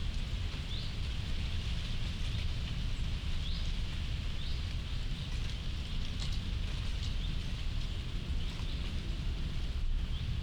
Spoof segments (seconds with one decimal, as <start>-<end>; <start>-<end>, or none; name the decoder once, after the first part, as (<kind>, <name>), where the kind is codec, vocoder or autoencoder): 0.0-1.7 (vocoder, BigVGAN v2); 6.9-8.0